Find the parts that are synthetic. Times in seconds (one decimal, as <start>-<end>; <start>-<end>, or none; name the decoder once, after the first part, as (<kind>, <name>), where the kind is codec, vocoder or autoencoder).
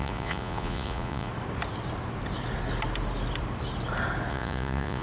0.0-1.3 (vocoder, Vocos); 4.3-5.0